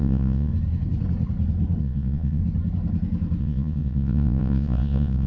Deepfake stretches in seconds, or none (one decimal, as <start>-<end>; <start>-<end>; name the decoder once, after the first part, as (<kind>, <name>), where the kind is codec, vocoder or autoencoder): 0.0-0.5 (vocoder, Vocos); 1.8-2.4; 3.4-5.3